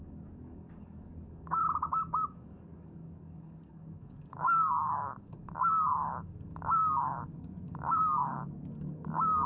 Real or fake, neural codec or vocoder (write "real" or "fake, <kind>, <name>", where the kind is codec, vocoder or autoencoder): fake, codec, DAC